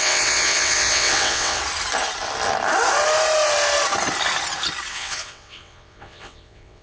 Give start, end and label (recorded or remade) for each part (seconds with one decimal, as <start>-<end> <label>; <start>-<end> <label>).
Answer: 0.0-1.6 remade; 1.6-4.9 recorded; 4.9-6.8 remade